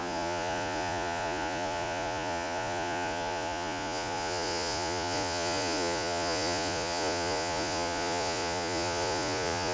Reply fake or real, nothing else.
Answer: fake